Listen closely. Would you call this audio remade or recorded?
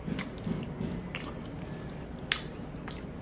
recorded